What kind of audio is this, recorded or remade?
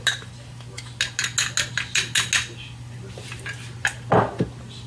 recorded